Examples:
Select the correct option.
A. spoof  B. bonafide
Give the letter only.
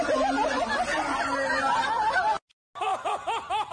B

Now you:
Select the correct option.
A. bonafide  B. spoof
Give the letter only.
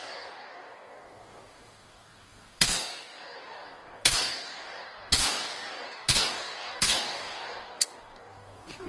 B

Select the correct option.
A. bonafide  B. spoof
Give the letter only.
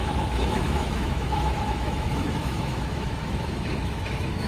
B